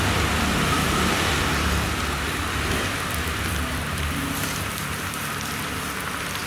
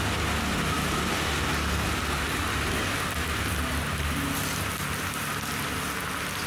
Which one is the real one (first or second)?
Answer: second